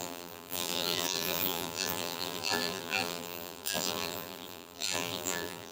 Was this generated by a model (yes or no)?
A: yes